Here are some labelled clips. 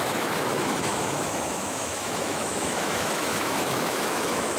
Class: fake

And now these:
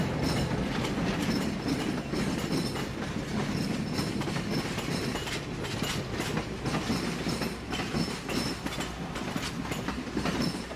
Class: real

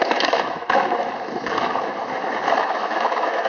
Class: fake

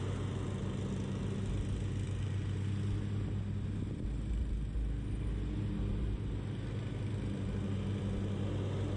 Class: real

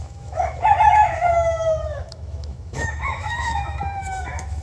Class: fake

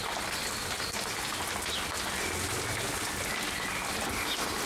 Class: real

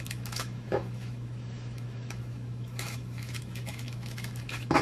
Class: fake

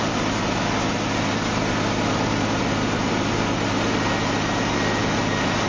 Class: real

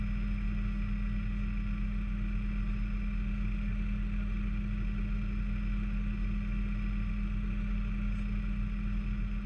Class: real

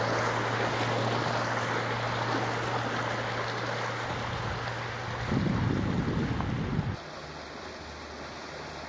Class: real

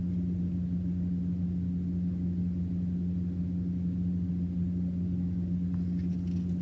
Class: real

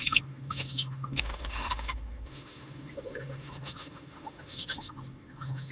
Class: fake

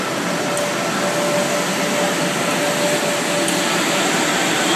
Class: real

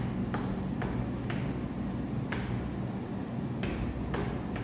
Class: real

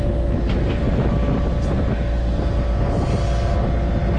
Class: real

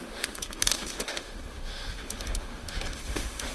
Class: fake